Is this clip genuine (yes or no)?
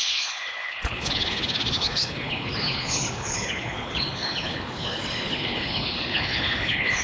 no